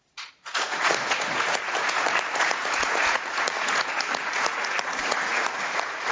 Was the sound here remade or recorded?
remade